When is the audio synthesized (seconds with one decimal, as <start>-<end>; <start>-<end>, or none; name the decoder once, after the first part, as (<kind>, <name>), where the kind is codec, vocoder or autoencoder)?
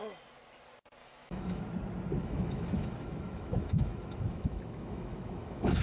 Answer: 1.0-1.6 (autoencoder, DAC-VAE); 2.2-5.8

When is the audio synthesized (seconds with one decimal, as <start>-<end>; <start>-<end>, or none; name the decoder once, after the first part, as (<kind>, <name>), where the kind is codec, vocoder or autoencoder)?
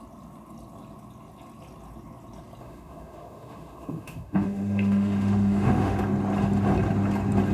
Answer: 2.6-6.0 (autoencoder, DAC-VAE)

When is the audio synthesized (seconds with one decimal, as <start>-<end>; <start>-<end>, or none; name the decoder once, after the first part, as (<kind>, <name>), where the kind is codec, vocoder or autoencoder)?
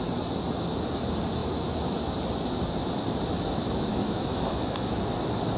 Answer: 3.9-5.0 (autoencoder, DAC-VAE)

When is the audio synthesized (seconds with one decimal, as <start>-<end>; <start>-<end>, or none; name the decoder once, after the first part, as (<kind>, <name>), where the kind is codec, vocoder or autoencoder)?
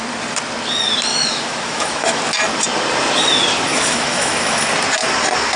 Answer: 1.1-2.2 (autoencoder, DAC-VAE); 3.7-4.7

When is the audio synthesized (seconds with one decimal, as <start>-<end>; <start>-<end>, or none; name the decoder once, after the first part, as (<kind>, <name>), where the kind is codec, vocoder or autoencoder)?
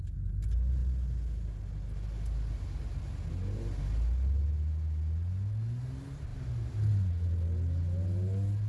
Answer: none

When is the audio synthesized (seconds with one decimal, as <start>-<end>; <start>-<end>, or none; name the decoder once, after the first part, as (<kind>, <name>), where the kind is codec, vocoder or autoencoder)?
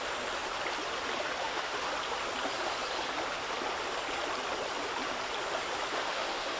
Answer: 1.4-1.9 (autoencoder, DAC-VAE); 5.9-6.6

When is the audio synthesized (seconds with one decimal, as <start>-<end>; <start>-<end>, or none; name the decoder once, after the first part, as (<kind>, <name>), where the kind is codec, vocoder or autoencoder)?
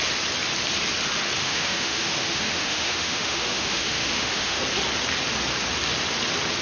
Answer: 1.4-4.6 (autoencoder, DAC-VAE)